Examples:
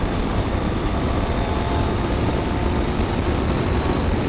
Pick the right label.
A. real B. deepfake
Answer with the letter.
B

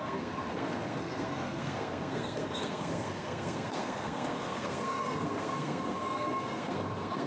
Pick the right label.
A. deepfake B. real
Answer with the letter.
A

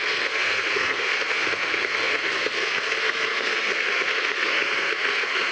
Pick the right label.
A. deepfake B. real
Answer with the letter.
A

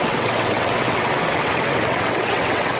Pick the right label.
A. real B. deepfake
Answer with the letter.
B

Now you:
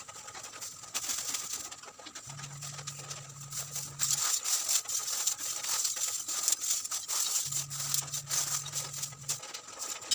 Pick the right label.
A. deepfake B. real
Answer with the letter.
B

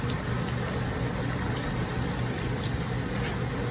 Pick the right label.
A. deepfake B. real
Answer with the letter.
B